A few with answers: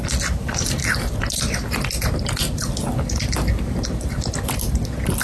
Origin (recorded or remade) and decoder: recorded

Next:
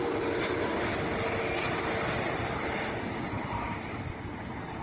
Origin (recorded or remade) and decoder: recorded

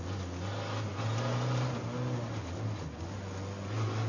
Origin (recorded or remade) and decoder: recorded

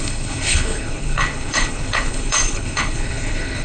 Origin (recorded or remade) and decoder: remade, codec, HILCodec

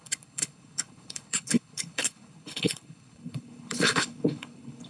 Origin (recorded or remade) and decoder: remade, codec, HILCodec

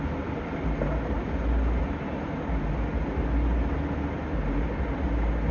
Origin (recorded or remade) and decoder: recorded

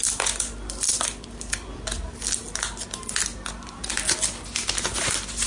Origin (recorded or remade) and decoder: recorded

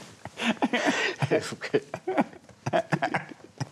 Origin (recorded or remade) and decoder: recorded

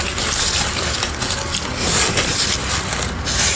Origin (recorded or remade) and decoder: recorded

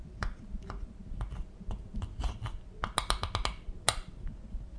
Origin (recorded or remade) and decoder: recorded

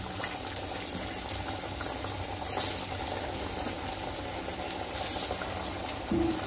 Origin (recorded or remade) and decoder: recorded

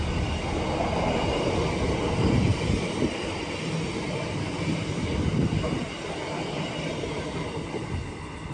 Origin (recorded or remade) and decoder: recorded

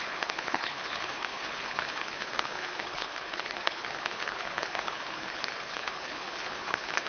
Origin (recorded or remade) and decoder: remade, codec, HILCodec